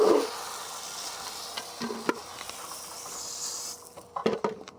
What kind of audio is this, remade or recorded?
recorded